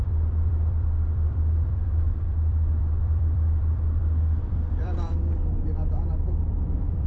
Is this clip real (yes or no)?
no